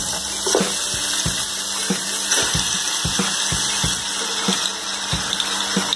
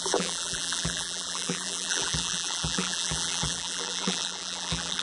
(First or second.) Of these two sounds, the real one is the first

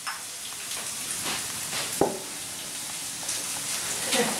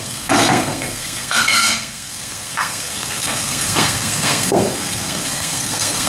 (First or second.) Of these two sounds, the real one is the first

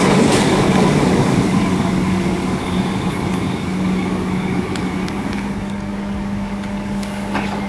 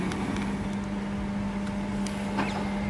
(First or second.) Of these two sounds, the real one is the second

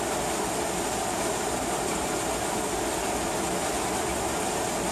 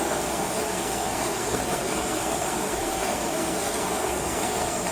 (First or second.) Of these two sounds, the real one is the first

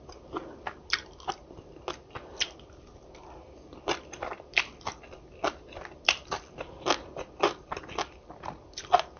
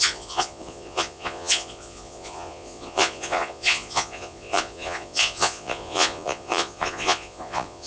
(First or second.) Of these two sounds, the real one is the first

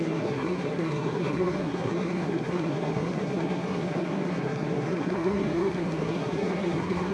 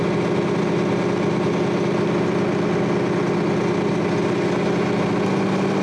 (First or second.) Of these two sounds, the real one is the second